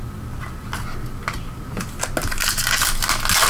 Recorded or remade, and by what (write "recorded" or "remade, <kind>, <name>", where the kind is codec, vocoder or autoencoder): recorded